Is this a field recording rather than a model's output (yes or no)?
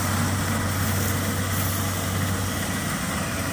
yes